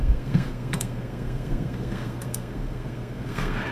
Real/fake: fake